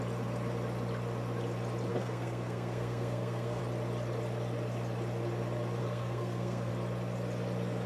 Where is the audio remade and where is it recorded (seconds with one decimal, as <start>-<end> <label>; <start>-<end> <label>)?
0.0-1.9 recorded; 1.9-3.6 remade; 3.6-5.8 recorded; 5.8-6.7 remade; 6.7-7.9 recorded